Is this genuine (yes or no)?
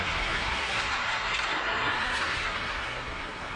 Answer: no